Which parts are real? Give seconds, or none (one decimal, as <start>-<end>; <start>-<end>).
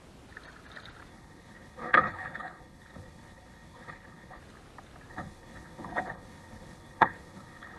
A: 0.0-1.1; 4.4-5.1